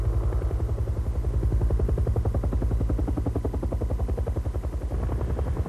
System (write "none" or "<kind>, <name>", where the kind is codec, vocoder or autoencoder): none